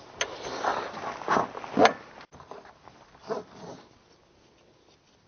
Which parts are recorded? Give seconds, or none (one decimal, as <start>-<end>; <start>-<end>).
0.0-5.3